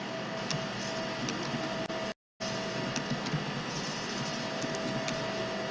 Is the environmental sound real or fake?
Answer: real